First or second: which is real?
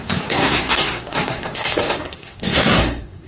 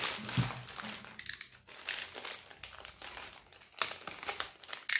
second